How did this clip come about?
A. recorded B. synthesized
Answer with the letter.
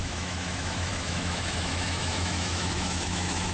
B